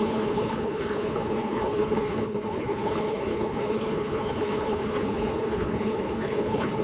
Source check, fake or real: fake